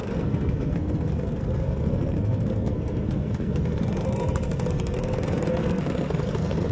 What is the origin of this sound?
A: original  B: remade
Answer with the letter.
B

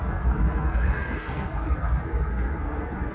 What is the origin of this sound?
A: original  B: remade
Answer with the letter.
B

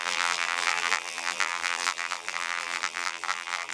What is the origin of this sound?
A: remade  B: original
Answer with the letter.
A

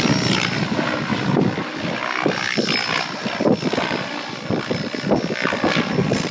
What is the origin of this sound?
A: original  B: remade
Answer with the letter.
A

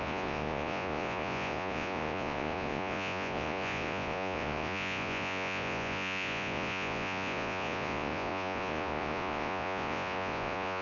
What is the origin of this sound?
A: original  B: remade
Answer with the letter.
B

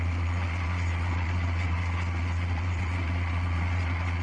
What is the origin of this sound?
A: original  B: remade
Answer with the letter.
B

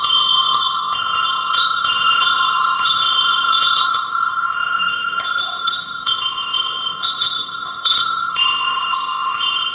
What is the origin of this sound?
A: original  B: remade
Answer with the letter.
B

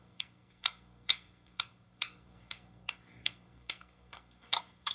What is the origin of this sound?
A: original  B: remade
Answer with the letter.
B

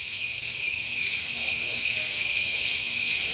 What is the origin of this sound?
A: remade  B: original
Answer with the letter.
A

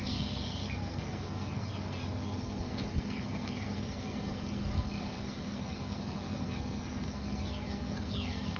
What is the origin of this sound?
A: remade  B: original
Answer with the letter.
A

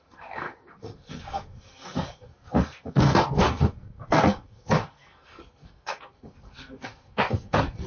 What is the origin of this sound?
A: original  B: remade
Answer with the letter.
B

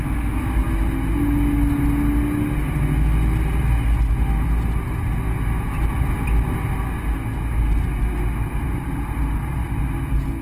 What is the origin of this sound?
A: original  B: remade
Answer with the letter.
A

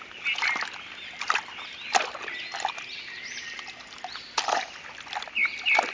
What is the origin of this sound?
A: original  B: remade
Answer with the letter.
A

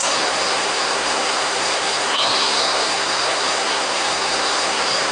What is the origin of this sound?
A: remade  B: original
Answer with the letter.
A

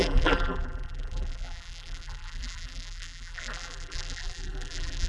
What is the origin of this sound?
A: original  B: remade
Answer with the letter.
B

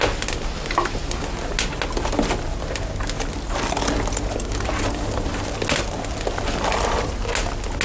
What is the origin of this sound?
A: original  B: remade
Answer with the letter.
A